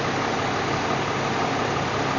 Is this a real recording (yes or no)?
yes